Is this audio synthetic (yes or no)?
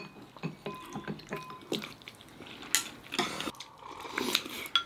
no